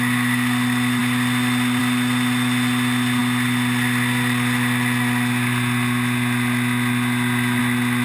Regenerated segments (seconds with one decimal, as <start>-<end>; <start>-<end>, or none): none